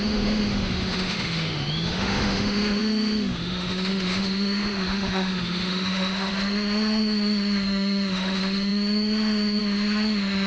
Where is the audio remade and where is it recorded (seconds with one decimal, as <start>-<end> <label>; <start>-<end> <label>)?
0.0-10.5 remade